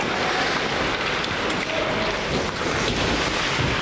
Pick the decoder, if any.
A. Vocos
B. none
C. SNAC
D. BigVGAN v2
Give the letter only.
B